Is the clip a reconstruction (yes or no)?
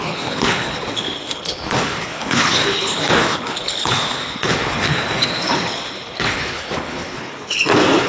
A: yes